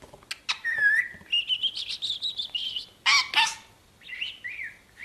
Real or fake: real